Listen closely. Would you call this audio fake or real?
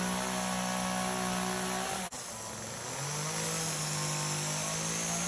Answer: real